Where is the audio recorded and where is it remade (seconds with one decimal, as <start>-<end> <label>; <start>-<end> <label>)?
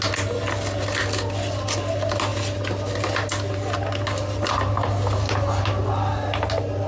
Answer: 0.0-6.9 recorded